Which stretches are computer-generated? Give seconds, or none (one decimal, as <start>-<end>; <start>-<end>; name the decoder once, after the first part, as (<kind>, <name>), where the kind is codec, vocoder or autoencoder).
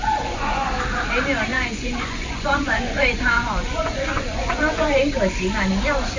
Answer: 0.0-0.7 (vocoder, Vocos); 1.5-5.2